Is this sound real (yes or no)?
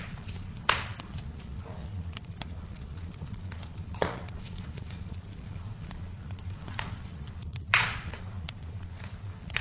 no